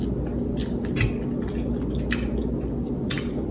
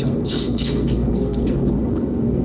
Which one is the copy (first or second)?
second